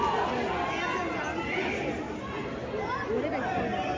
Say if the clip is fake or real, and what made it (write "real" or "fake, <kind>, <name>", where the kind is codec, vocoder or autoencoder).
real